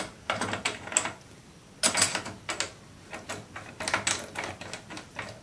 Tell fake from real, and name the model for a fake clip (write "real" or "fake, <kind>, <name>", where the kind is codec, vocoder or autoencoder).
real